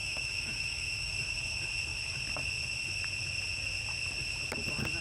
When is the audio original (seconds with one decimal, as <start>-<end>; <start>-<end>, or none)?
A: 1.1-5.0